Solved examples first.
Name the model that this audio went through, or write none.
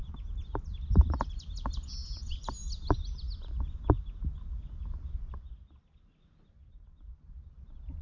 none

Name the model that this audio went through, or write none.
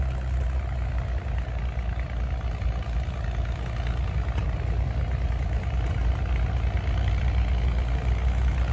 none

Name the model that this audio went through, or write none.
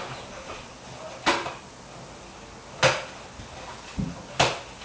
none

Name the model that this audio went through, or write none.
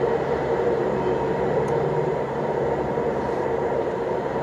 vocoder, BigVGAN v2